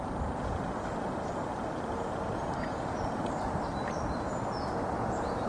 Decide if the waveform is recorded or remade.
remade